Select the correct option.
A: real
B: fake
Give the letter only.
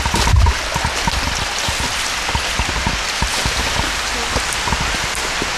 A